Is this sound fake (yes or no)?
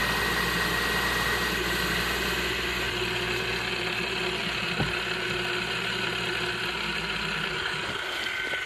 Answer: no